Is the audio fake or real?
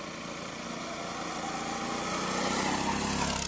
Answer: real